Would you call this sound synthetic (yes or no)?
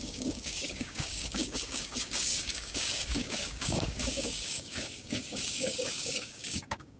yes